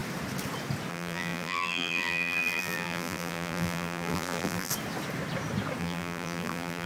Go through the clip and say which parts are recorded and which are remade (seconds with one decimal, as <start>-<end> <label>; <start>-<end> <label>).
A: 0.0-0.9 recorded; 0.9-4.7 remade; 4.7-5.8 recorded; 5.8-6.9 remade